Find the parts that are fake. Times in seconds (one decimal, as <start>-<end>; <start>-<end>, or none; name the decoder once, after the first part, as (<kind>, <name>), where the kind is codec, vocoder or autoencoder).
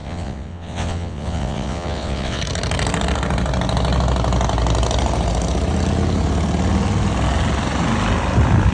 0.0-2.4 (vocoder, WaveNeXt)